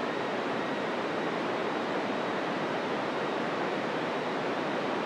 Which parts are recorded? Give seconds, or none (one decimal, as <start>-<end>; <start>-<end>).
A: 1.2-1.6